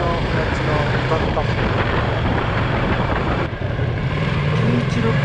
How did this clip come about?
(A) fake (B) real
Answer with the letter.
A